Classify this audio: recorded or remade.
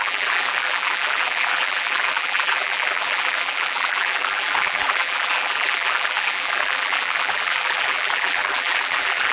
remade